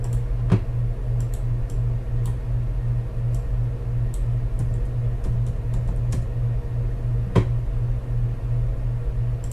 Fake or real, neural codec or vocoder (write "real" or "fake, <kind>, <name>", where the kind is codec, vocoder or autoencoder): real